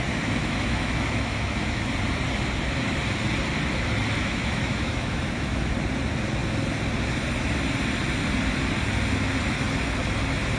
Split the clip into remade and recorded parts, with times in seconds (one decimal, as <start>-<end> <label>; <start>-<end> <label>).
0.0-0.4 recorded; 0.4-1.8 remade; 1.8-4.2 recorded; 4.2-5.6 remade; 5.6-10.6 recorded